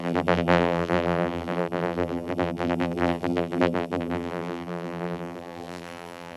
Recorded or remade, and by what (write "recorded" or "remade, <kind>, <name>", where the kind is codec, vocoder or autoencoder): remade, vocoder, BigVGAN v2